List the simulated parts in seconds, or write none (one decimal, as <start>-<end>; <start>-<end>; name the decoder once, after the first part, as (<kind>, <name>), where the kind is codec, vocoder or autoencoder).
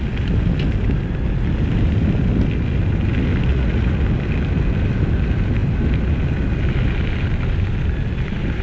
3.5-4.0 (vocoder, Vocos)